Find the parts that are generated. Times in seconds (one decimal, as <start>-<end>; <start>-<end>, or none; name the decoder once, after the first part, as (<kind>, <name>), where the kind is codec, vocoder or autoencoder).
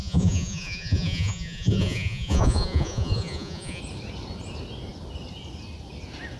0.0-3.8 (vocoder, Vocos)